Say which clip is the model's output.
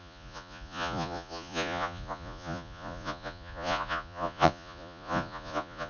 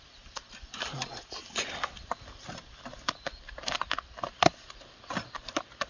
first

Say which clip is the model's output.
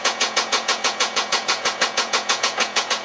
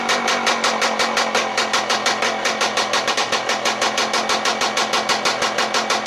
first